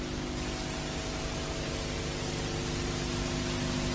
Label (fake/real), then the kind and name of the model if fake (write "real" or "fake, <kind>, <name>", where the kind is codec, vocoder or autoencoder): real